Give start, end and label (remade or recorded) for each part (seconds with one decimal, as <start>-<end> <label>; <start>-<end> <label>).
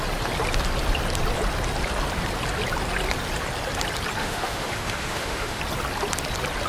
0.0-4.2 recorded; 4.2-5.6 remade; 5.6-6.7 recorded